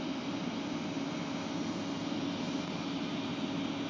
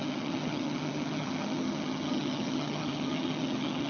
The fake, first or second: second